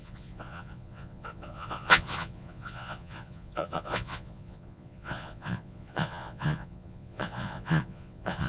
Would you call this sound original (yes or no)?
no